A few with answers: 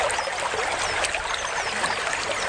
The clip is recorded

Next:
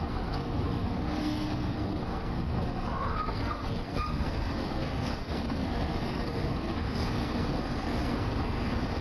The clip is remade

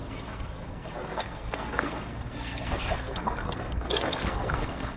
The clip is remade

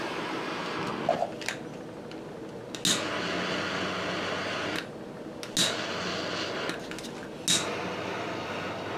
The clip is recorded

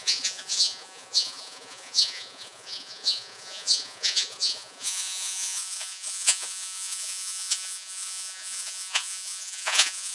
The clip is remade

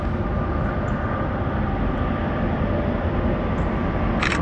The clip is recorded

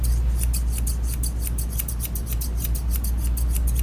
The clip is recorded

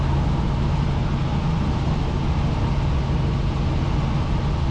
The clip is recorded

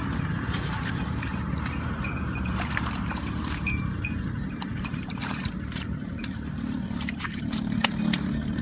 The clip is remade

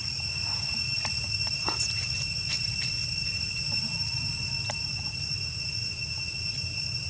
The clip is recorded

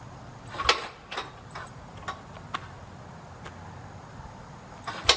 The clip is recorded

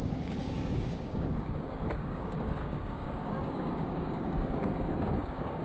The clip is remade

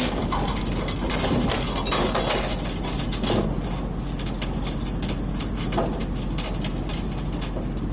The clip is recorded